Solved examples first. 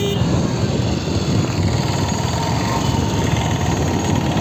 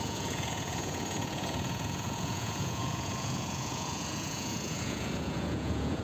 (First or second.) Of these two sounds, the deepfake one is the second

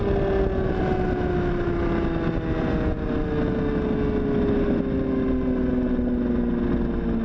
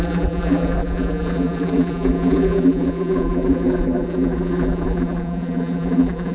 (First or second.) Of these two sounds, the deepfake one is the second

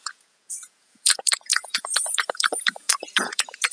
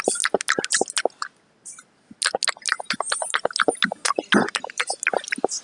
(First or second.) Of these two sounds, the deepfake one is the first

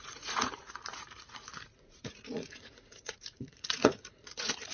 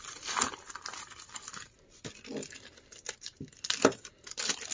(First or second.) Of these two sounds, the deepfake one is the first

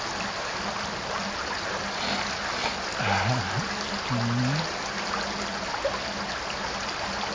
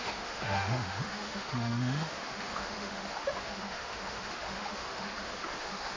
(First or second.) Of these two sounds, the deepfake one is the second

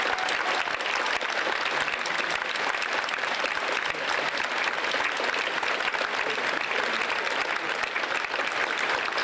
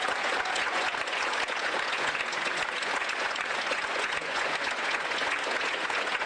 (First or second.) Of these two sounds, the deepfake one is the second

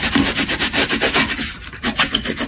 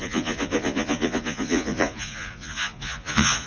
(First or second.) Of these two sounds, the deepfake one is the second